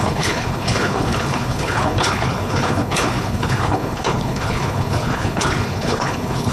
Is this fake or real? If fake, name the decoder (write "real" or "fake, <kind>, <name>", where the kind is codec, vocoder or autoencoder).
fake, codec, HILCodec